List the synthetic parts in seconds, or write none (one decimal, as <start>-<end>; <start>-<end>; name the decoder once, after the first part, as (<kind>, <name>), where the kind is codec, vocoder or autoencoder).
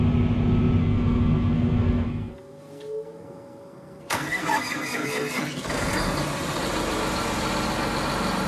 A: 0.8-5.9 (codec, SNAC)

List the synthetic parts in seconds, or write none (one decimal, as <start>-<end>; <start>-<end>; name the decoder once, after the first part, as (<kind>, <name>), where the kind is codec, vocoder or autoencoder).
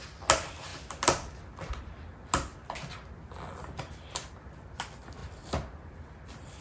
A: none